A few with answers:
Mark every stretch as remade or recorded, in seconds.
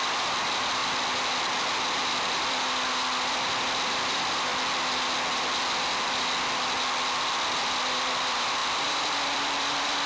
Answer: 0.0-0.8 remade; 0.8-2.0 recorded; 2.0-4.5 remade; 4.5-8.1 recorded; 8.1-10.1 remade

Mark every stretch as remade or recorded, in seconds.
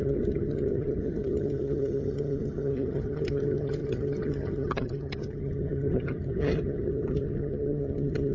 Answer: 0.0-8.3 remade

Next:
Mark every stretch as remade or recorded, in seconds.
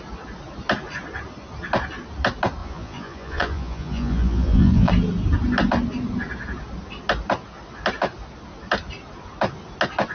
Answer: 0.0-2.6 recorded; 2.6-4.9 remade; 4.9-10.1 recorded